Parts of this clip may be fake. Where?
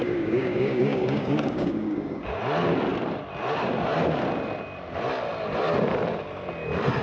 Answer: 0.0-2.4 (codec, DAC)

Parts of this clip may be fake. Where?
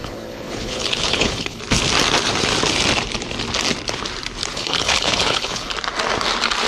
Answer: 0.0-1.6 (codec, HILCodec); 4.5-5.7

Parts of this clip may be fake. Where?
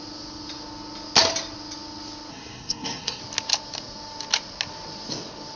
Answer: 2.3-3.2 (codec, SNAC)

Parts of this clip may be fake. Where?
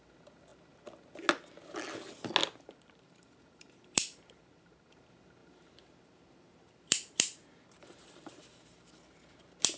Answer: 2.4-4.9 (vocoder, BigVGAN v2); 5.4-9.0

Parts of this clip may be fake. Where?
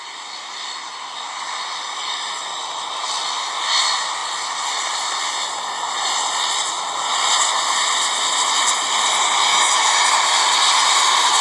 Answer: 9.5-10.1 (autoencoder, DAC-VAE)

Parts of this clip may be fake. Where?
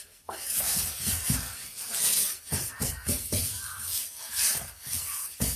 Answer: 0.0-5.6 (codec, SNAC)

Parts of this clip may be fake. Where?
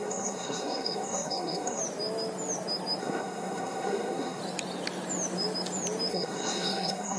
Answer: 0.0-1.8 (codec, SNAC); 3.0-4.4; 6.1-7.2